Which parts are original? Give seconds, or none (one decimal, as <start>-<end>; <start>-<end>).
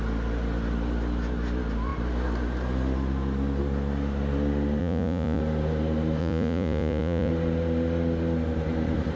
0.0-4.8; 5.4-6.2; 7.3-9.2